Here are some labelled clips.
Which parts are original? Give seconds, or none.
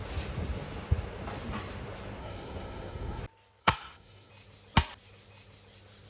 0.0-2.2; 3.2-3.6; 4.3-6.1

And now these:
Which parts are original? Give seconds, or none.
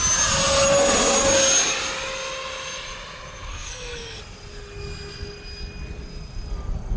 0.0-3.5; 4.2-7.0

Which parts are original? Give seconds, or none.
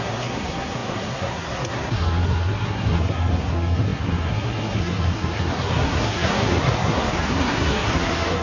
none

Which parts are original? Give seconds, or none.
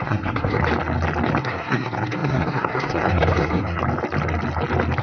0.6-1.4; 3.8-5.0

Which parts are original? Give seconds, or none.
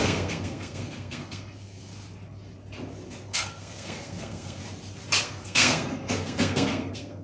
2.0-3.1; 4.6-5.2